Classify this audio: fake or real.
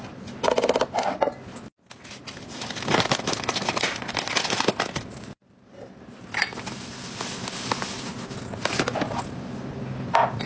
real